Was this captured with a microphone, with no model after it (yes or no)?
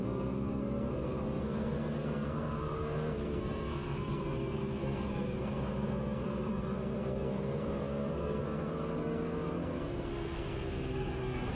no